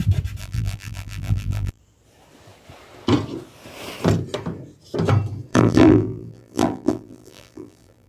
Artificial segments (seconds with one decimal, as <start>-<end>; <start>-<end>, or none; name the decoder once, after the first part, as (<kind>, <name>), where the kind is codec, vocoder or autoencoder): 0.4-1.8 (vocoder, BigVGAN v2); 5.5-8.1

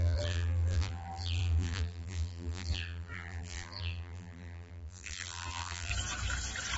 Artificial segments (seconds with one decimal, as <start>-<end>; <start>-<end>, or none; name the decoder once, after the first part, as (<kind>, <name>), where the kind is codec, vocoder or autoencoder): 0.0-5.9 (vocoder, BigVGAN v2)

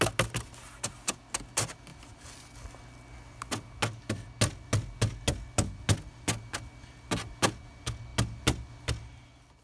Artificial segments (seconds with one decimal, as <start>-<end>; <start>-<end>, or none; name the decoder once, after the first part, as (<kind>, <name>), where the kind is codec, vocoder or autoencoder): none

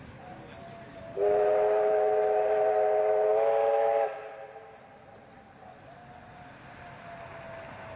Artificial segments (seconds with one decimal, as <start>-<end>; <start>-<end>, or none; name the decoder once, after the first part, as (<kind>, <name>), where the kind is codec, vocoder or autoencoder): none

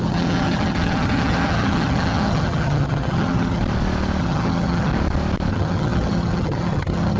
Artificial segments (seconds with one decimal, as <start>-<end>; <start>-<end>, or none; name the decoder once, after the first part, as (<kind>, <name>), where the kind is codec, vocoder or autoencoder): 0.0-3.6 (vocoder, HiFi-GAN); 4.2-4.9; 5.5-7.2

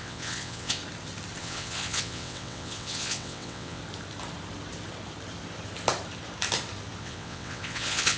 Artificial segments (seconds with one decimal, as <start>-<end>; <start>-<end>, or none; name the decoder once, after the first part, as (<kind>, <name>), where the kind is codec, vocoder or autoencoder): 0.0-0.8 (vocoder, WaveNeXt); 1.4-3.8; 7.0-8.2

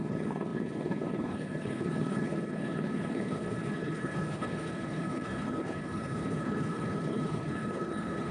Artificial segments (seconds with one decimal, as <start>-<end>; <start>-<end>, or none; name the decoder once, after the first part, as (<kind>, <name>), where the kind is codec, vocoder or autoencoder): 0.0-8.3 (codec, HILCodec)

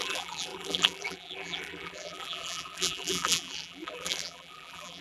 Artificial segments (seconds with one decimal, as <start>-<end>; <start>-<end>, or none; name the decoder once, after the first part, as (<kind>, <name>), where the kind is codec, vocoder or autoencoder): 0.0-5.0 (vocoder, BigVGAN v2)